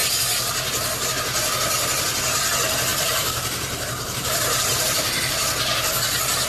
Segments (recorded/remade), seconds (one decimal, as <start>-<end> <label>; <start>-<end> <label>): 0.0-2.9 recorded; 2.9-5.2 remade; 5.2-6.5 recorded

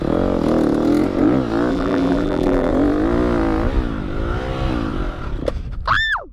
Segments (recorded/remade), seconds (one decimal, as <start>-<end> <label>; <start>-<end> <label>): 0.0-1.7 recorded; 1.7-2.7 remade; 2.7-6.3 recorded

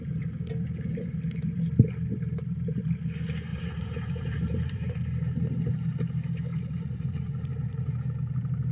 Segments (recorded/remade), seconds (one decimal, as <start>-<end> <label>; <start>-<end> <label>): 0.0-3.5 recorded; 3.5-5.0 remade; 5.0-6.5 recorded; 6.5-8.0 remade; 8.0-8.7 recorded

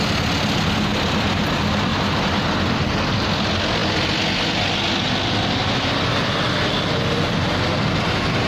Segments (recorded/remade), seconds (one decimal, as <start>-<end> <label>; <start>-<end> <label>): 0.0-0.9 recorded; 0.9-1.4 remade; 1.4-1.9 recorded; 1.9-2.7 remade; 2.7-8.5 recorded

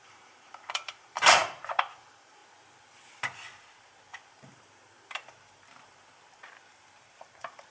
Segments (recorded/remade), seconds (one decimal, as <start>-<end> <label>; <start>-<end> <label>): 0.0-2.4 remade; 2.4-7.0 recorded; 7.0-7.7 remade

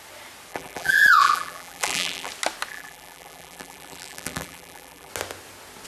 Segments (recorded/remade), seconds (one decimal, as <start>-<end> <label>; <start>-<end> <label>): 0.0-0.5 recorded; 0.5-2.3 remade; 2.3-2.7 recorded; 2.7-5.1 remade; 5.1-5.9 recorded